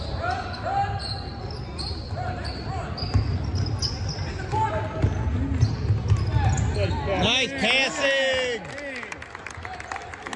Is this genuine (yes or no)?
yes